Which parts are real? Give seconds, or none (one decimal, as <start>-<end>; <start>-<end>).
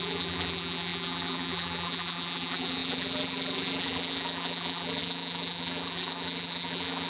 none